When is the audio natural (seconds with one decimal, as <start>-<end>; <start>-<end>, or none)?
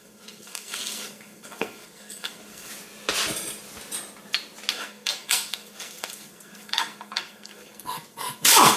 2.7-4.7